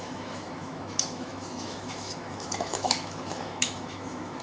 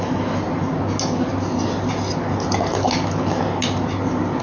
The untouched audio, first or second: second